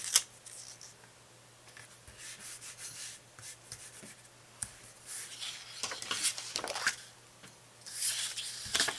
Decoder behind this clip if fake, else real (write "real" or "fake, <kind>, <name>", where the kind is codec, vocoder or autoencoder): real